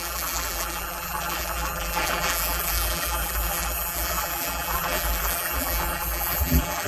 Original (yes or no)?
no